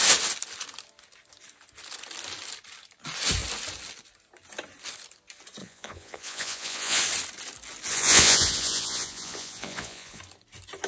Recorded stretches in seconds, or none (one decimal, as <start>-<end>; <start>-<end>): 0.0-5.6; 7.0-7.9; 10.2-10.9